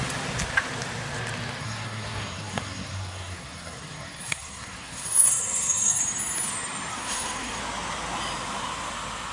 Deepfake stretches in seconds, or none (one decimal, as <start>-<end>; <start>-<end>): 1.6-6.0; 6.9-7.6